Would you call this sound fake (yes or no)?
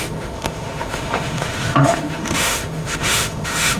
yes